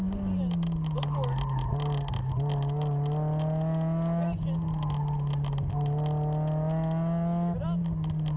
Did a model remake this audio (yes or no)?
no